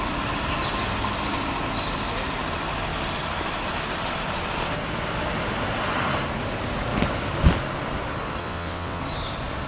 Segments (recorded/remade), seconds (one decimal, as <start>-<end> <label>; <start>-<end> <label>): 0.0-8.4 recorded; 8.4-9.0 remade; 9.0-9.7 recorded